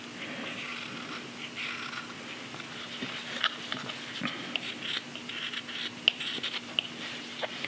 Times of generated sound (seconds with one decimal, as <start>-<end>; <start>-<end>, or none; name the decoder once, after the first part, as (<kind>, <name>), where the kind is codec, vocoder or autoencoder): none